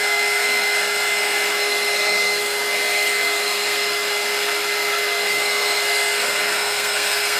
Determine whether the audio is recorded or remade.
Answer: remade